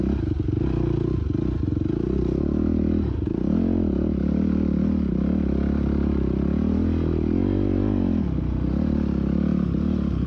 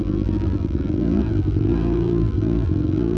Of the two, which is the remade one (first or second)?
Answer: second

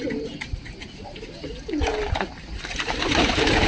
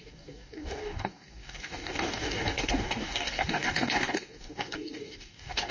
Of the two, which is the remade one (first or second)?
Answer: second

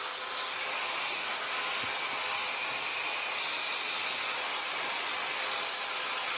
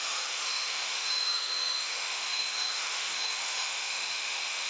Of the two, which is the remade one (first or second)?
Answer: second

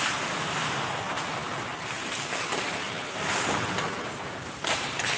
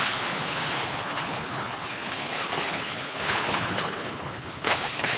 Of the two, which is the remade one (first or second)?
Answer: second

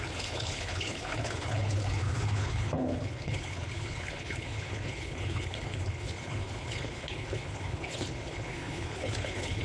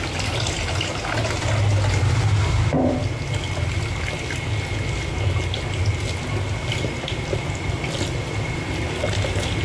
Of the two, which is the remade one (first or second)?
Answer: first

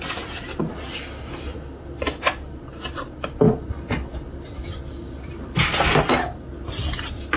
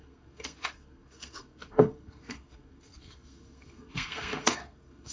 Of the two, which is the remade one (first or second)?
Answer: second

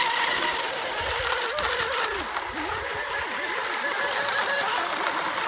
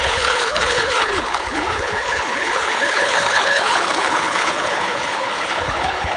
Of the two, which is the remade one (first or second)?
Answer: second